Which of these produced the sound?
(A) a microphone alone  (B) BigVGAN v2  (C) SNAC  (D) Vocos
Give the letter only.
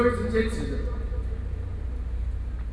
A